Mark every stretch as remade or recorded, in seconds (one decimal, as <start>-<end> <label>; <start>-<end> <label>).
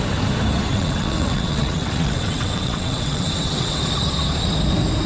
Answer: 0.0-0.7 recorded; 0.7-3.8 remade; 3.8-5.1 recorded